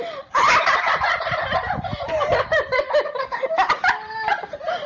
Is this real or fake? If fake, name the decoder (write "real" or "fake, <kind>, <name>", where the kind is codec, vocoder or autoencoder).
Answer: fake, vocoder, BigVGAN v2